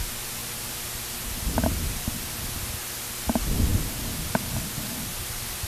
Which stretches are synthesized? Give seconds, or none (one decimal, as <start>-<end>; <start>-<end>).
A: none